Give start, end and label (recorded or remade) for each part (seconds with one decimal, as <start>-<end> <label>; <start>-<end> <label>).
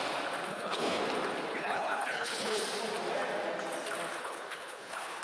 0.0-0.5 recorded; 0.5-1.0 remade; 1.0-1.5 recorded; 1.5-2.6 remade; 2.6-4.1 recorded; 4.1-5.2 remade